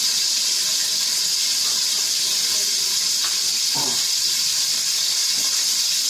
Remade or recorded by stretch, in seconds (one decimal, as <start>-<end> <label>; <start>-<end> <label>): 0.0-0.7 remade; 0.7-1.4 recorded; 1.4-5.2 remade; 5.2-6.1 recorded